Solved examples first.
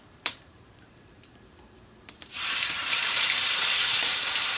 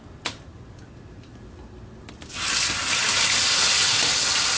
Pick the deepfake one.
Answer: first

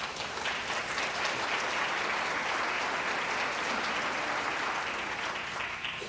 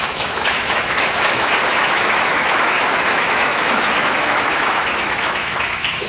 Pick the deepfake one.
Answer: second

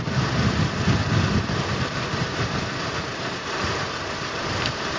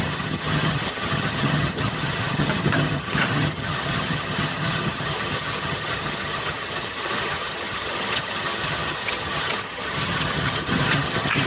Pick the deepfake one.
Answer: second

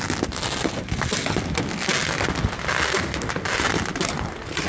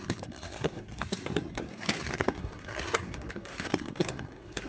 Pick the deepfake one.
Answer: second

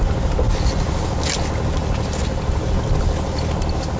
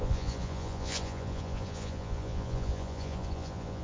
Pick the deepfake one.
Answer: second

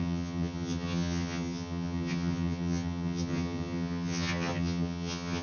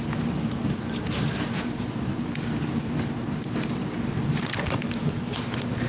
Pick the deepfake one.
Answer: first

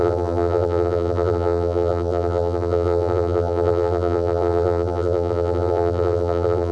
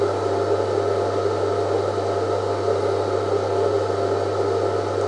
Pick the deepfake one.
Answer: first